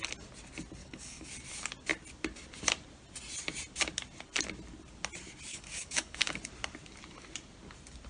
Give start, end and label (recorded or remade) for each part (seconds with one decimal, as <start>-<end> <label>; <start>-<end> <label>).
0.0-0.8 recorded; 0.8-1.3 remade; 1.3-5.5 recorded; 5.5-6.4 remade; 6.4-8.1 recorded